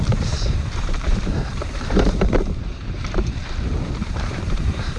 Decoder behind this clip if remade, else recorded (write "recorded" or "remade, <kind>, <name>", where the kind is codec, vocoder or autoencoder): remade, vocoder, BigVGAN v2